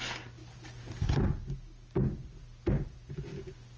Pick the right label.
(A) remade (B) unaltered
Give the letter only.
B